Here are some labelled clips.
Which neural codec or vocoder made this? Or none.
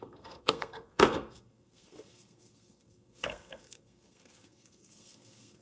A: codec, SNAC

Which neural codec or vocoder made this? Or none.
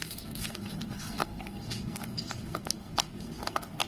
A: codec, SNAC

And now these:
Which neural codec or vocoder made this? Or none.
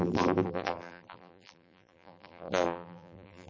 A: vocoder, BigVGAN v2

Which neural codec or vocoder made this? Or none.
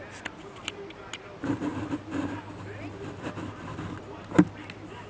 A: none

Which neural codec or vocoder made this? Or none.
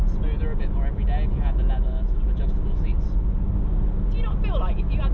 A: none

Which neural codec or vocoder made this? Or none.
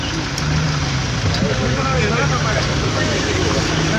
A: none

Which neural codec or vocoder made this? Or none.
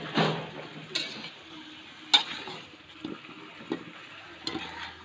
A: none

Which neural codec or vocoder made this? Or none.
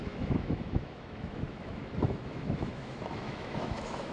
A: autoencoder, DAC-VAE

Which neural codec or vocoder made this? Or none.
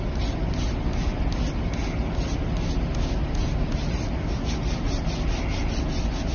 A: none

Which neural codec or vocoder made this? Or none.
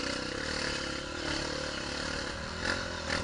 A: none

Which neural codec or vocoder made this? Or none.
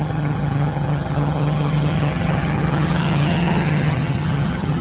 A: vocoder, HiFi-GAN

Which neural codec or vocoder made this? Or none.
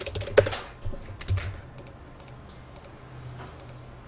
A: none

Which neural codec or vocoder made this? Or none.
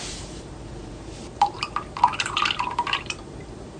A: vocoder, BigVGAN v2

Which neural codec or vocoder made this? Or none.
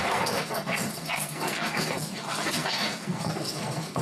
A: codec, SNAC